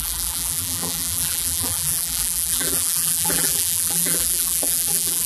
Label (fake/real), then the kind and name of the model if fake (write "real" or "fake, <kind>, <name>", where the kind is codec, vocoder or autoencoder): fake, vocoder, BigVGAN v2